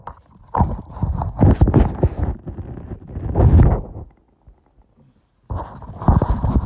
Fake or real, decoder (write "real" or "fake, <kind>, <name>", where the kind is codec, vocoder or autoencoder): real